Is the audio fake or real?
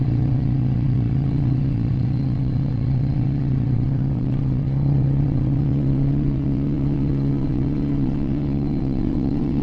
fake